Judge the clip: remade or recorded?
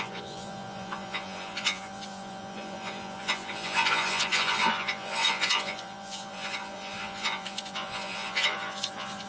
remade